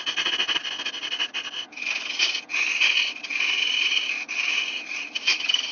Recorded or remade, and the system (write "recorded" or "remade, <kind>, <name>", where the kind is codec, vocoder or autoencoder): recorded